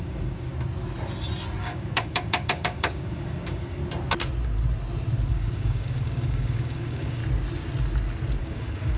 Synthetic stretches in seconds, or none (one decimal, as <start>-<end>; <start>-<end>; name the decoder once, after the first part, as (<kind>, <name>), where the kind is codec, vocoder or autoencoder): 0.0-0.5 (codec, DAC); 1.6-3.8; 5.3-7.2; 8.4-9.0